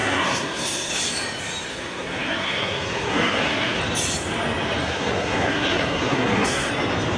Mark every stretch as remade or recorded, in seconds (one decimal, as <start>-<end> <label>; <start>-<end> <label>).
0.0-0.9 remade; 0.9-1.7 recorded; 1.7-3.8 remade; 3.8-4.8 recorded; 4.8-6.7 remade; 6.7-7.2 recorded